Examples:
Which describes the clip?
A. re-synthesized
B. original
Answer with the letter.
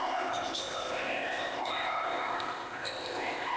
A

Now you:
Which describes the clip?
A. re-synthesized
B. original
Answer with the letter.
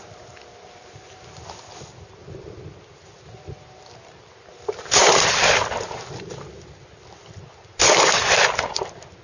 B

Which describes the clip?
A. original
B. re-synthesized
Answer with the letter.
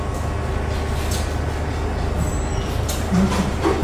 A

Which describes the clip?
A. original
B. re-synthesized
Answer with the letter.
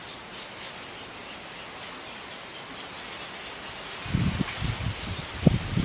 A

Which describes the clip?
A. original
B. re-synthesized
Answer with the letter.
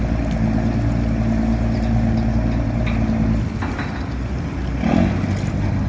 A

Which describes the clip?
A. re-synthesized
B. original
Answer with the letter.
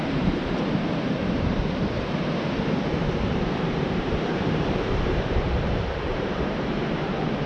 A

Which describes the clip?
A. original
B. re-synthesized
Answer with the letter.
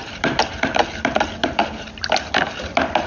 B